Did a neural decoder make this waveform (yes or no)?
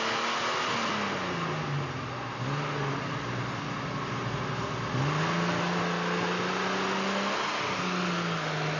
no